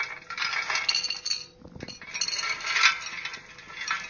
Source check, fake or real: real